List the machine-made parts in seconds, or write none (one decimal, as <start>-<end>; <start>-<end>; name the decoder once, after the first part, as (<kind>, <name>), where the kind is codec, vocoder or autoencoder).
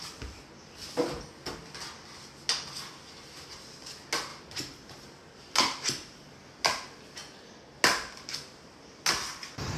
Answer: none